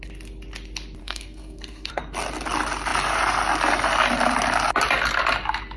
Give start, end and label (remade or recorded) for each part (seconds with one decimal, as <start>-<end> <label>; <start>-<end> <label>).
0.0-1.0 recorded; 1.0-2.0 remade; 2.0-5.8 recorded